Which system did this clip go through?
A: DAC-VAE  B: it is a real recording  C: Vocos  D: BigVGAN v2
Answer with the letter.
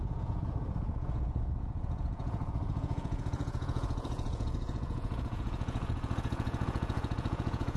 C